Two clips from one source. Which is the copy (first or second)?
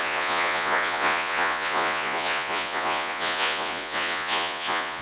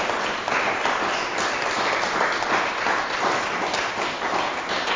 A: first